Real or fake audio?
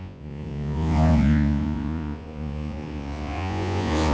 fake